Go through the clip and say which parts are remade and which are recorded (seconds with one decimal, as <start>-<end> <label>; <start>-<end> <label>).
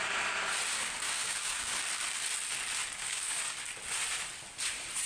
0.0-0.7 recorded; 0.7-1.8 remade; 1.8-2.8 recorded; 2.8-3.7 remade; 3.7-5.1 recorded